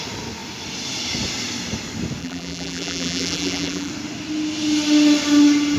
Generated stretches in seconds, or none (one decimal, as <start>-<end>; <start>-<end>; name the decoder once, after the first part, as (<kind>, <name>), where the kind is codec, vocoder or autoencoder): 2.2-3.9 (vocoder, BigVGAN v2)